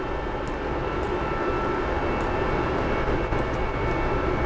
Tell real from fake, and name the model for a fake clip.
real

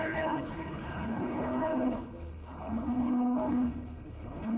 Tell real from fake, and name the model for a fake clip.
fake, codec, HILCodec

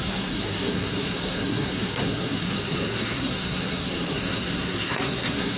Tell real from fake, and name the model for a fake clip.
fake, codec, SNAC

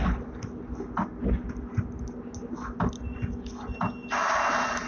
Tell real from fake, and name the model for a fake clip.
real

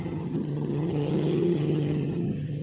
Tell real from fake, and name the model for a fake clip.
fake, vocoder, HiFi-GAN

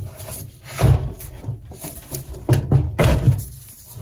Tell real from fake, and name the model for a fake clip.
real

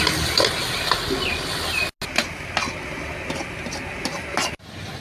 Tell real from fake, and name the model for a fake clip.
real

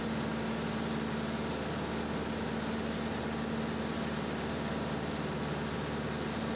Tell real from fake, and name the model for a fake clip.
real